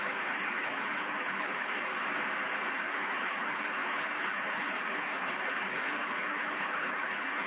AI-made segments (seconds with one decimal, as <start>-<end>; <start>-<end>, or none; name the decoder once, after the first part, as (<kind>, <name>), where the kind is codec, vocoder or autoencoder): 0.0-1.9 (codec, HILCodec); 2.7-7.5